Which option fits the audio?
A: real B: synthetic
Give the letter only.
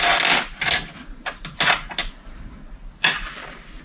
A